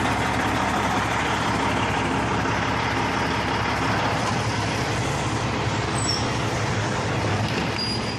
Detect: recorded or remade recorded